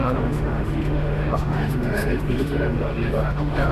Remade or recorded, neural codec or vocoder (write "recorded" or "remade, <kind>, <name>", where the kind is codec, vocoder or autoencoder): remade, autoencoder, DAC-VAE